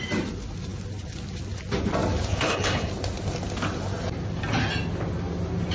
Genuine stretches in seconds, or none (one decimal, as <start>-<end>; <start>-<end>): 0.0-2.3; 2.9-5.7